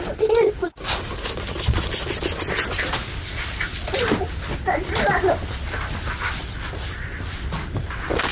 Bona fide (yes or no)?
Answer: yes